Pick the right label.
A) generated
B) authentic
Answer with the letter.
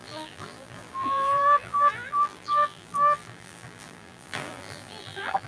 A